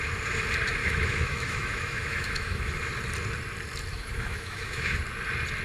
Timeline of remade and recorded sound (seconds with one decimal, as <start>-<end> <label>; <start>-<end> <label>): 0.0-0.8 recorded; 0.8-2.8 remade; 2.8-3.9 recorded; 3.9-5.0 remade; 5.0-5.6 recorded

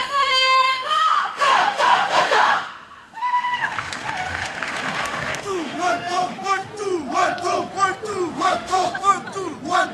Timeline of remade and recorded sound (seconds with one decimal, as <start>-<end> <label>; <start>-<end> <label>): 0.0-6.7 remade; 6.7-8.3 recorded; 8.3-9.1 remade; 9.1-9.9 recorded

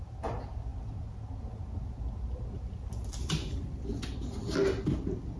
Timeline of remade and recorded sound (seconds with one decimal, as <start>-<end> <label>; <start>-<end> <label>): 0.0-5.4 recorded

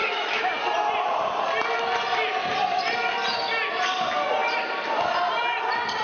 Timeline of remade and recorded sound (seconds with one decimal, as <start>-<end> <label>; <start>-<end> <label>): 0.0-0.5 remade; 0.5-6.0 recorded